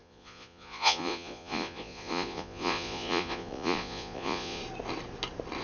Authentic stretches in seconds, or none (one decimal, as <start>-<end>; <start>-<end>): 4.6-5.6